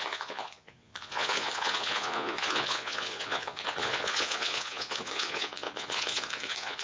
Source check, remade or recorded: remade